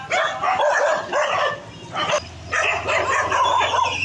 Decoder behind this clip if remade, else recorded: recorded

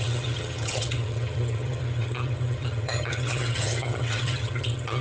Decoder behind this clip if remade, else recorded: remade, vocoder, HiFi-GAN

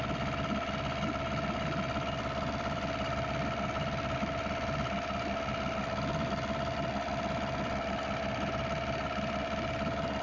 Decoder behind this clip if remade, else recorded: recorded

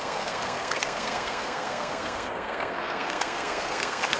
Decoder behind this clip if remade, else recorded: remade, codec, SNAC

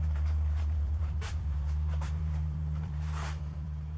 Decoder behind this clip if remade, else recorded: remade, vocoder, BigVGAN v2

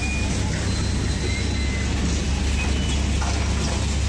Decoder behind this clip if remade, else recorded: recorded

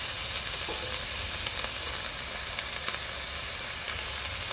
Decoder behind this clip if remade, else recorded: recorded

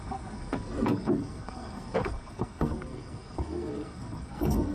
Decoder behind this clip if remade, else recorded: remade, codec, SNAC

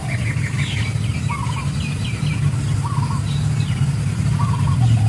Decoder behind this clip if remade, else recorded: recorded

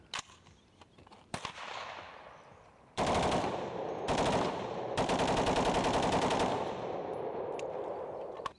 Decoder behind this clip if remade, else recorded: remade, vocoder, BigVGAN v2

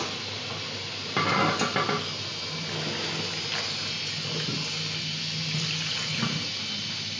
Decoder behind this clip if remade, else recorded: recorded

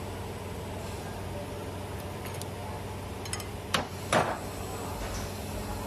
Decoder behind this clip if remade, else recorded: recorded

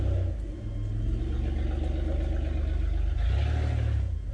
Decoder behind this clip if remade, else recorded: recorded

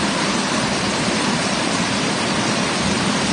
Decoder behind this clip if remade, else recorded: recorded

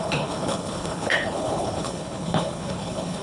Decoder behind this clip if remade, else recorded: remade, codec, HILCodec